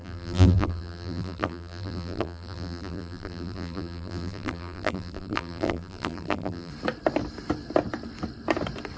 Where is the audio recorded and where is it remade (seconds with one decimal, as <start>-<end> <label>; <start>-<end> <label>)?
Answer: 0.0-6.7 remade; 6.7-9.0 recorded

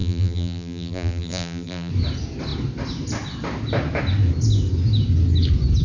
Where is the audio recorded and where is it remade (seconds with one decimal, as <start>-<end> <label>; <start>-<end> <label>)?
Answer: 0.0-1.9 remade; 1.9-5.8 recorded

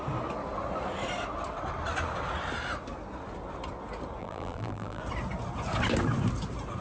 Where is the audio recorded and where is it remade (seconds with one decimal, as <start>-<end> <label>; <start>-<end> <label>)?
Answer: 0.0-4.2 recorded; 4.2-5.0 remade; 5.0-6.8 recorded

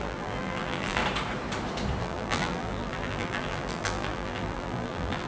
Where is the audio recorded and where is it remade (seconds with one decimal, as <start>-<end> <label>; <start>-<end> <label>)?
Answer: 0.0-1.0 remade; 1.0-2.0 recorded; 2.0-5.3 remade

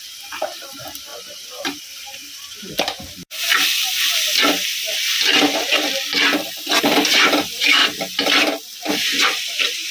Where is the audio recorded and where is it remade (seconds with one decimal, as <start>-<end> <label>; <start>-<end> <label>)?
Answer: 0.0-3.5 remade; 3.5-6.8 recorded; 6.8-7.8 remade; 7.8-8.9 recorded; 8.9-9.9 remade

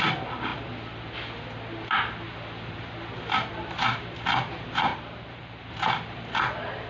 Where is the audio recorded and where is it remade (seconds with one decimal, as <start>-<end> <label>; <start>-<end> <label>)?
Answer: 0.0-0.5 remade; 0.5-3.5 recorded; 3.5-6.9 remade

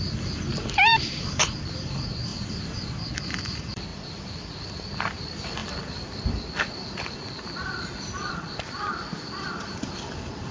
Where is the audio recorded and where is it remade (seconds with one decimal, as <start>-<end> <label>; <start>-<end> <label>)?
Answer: 0.0-10.5 remade

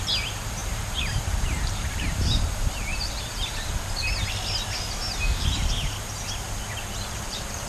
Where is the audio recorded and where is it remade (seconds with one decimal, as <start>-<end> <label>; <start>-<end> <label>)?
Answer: 0.0-2.9 remade; 2.9-7.1 recorded; 7.1-7.7 remade